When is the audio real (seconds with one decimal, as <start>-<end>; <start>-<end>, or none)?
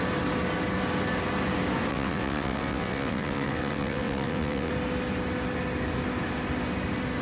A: 0.0-1.9; 4.7-7.2